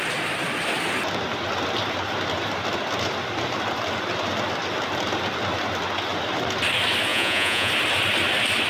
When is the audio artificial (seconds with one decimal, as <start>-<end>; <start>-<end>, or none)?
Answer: 7.1-7.7

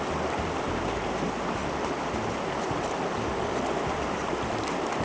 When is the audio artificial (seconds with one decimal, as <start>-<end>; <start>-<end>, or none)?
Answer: none

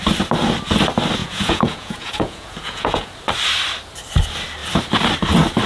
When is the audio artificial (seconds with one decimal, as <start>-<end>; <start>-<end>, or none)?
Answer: 1.2-3.1

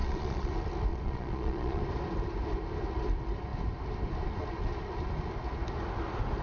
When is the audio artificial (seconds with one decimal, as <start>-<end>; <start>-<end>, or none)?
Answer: 0.0-0.5; 0.9-1.8